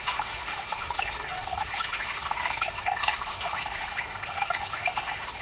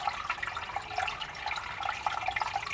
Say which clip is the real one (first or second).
second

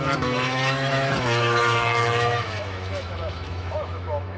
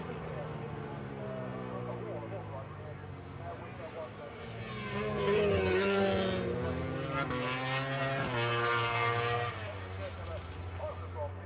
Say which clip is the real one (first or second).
second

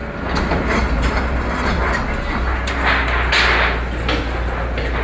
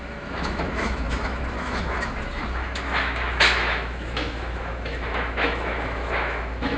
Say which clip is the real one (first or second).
first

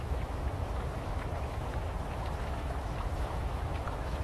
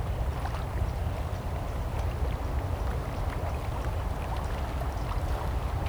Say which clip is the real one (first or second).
second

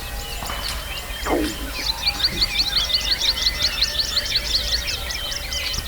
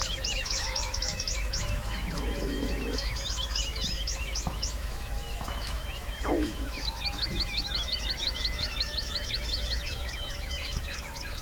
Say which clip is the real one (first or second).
first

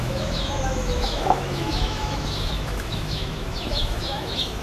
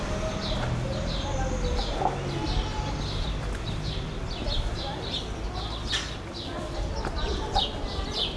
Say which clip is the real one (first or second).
second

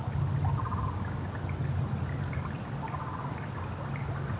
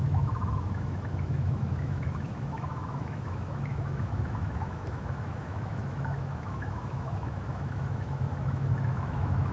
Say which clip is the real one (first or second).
first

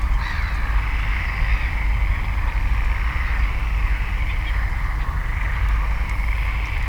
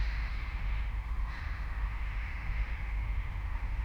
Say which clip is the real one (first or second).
first